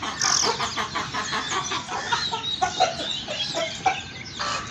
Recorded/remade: recorded